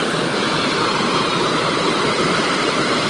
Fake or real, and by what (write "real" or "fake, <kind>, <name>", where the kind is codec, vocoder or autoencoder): real